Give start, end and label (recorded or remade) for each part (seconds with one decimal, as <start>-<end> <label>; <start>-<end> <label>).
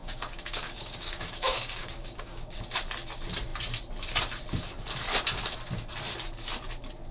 0.0-2.6 remade; 2.6-7.1 recorded